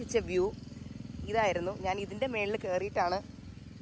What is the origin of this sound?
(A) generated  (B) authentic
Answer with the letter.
B